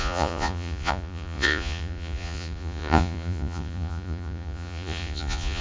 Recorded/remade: remade